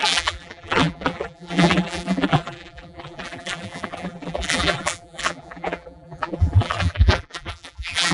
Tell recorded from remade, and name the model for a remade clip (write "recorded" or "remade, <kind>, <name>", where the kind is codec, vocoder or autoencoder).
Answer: remade, vocoder, BigVGAN v2